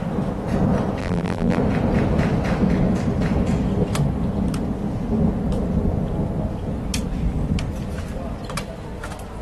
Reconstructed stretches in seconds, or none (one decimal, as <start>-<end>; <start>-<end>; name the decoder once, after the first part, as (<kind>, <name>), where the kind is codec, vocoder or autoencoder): 1.0-1.6 (vocoder, BigVGAN v2)